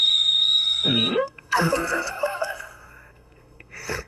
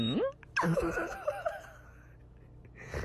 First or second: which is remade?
first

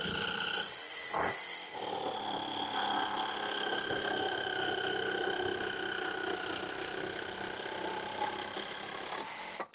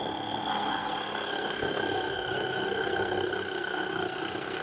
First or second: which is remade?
second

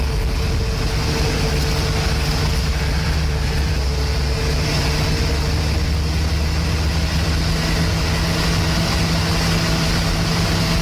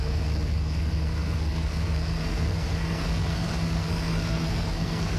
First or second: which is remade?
second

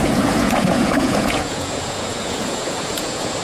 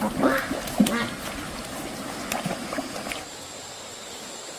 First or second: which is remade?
first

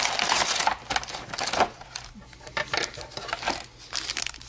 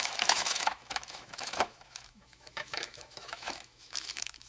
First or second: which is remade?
second